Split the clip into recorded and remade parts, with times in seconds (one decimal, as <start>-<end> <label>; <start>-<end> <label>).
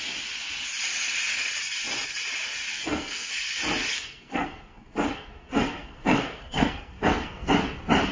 0.0-2.7 recorded; 2.7-3.3 remade; 3.3-3.9 recorded; 3.9-7.5 remade; 7.5-8.1 recorded